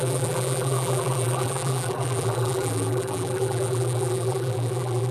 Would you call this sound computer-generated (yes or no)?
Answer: yes